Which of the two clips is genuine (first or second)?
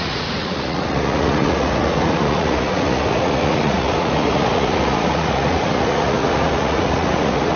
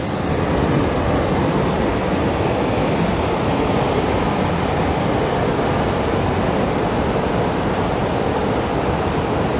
second